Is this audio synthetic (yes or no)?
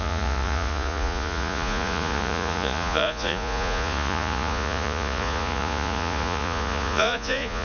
yes